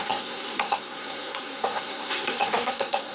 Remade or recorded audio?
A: remade